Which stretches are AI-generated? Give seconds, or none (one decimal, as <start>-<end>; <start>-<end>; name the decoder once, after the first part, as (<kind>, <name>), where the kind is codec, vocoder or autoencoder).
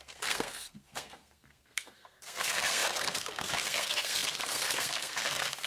0.0-5.7 (codec, SNAC)